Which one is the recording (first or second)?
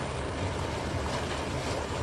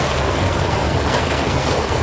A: first